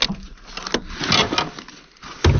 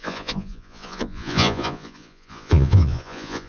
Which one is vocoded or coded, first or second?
second